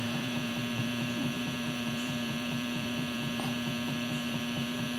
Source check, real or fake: fake